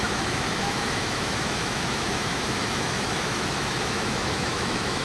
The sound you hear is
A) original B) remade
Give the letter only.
B